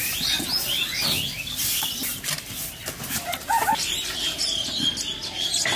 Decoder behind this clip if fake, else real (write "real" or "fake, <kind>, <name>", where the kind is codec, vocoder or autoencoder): real